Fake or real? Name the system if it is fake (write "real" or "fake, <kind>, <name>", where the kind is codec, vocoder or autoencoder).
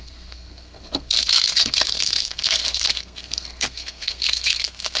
fake, codec, SNAC